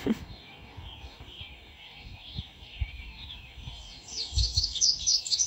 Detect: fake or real fake